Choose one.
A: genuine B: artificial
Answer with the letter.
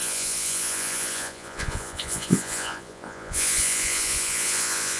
B